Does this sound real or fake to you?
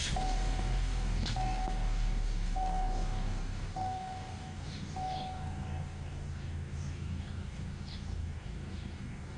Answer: fake